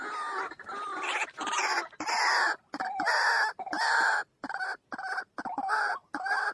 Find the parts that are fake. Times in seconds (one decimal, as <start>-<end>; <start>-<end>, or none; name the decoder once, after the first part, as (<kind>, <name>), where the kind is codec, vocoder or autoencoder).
none